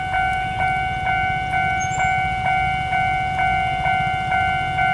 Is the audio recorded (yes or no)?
yes